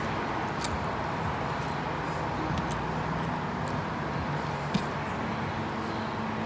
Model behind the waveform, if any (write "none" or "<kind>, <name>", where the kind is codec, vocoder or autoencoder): none